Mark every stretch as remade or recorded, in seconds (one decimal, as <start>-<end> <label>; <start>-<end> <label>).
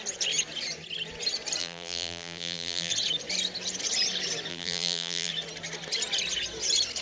0.0-1.6 recorded; 1.6-2.9 remade; 2.9-4.5 recorded; 4.5-5.3 remade; 5.3-7.0 recorded